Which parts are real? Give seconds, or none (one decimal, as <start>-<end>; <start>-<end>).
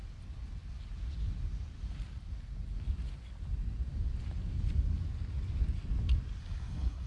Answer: 0.0-6.4